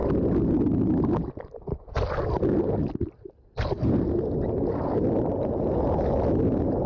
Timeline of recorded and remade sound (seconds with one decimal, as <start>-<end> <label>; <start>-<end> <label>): 0.0-6.9 recorded